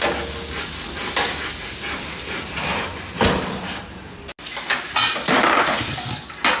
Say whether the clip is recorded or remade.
recorded